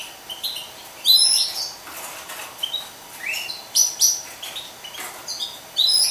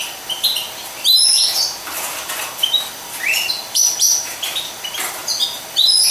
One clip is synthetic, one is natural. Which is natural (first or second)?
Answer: first